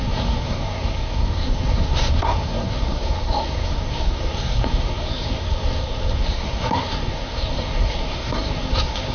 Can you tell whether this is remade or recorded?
remade